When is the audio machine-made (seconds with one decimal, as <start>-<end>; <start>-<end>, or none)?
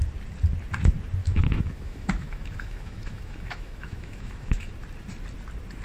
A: 1.2-4.7